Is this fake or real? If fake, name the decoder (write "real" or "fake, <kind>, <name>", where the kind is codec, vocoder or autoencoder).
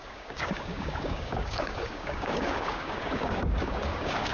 fake, codec, DAC